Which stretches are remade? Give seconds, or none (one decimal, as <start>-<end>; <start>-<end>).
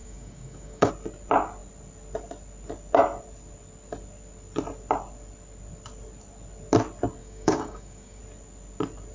0.0-0.9; 7.2-8.2